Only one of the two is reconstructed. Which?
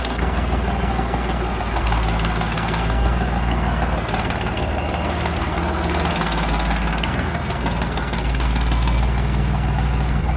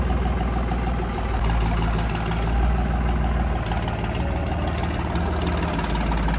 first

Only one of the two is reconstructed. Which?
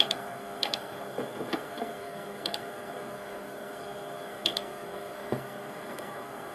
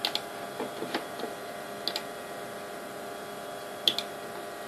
first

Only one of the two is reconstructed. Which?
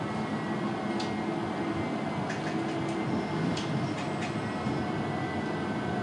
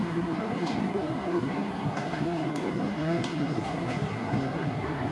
second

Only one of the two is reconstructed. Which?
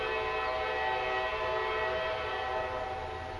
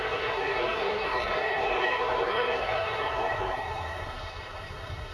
second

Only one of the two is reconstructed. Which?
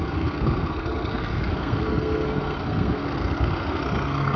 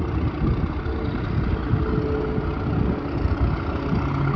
first